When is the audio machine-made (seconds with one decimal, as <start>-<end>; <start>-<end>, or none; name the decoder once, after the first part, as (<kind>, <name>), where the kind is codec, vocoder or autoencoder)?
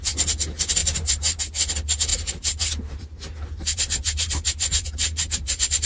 0.8-1.4 (vocoder, BigVGAN v2); 2.1-5.9